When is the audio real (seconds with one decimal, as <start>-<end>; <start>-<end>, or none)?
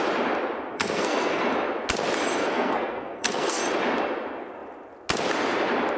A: 0.0-0.7; 1.4-2.4; 3.6-6.0